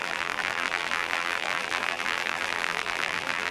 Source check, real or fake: fake